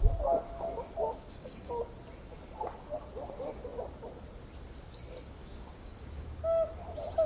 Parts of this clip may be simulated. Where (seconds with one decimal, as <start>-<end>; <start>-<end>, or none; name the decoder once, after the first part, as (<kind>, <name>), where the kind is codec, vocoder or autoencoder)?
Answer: 1.3-1.8 (codec, DAC); 5.4-6.4